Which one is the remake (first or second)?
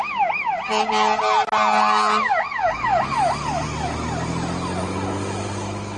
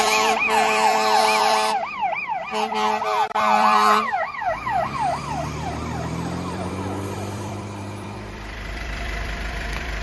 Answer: second